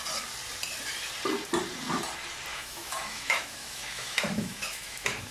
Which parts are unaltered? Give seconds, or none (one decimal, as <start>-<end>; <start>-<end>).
0.0-2.5

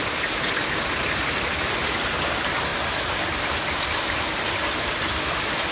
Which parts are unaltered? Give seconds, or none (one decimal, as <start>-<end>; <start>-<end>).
0.0-5.7

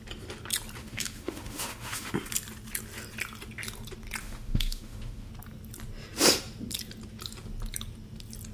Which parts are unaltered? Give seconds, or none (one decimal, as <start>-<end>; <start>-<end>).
0.0-0.8; 2.1-4.2; 5.3-8.5

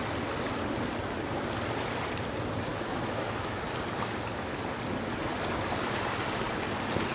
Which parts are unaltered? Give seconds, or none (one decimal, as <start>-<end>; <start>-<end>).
0.0-2.7; 3.6-7.1

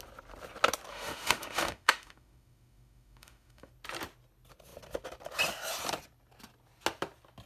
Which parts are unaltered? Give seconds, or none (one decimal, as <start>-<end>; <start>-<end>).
0.0-0.9; 3.7-7.5

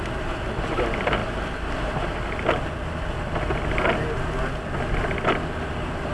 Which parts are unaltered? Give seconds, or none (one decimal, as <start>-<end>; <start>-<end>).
0.0-6.1

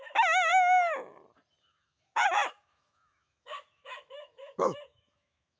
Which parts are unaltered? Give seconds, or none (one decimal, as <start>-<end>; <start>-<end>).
0.5-1.6

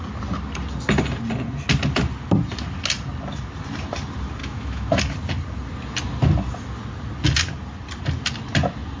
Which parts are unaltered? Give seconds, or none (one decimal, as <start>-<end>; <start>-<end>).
0.0-4.4; 5.0-9.0